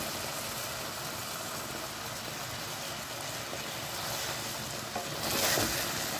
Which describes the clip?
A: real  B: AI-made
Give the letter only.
A